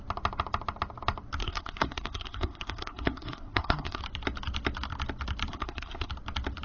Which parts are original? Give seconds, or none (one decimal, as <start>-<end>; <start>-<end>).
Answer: 0.0-1.4; 4.0-5.5; 6.1-6.6

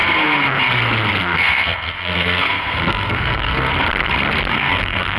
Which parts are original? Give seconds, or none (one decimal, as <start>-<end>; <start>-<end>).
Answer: 0.0-1.2; 3.7-4.5

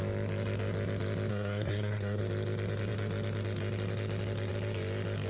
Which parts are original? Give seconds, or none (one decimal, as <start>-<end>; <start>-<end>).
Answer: 0.0-1.3; 2.2-5.3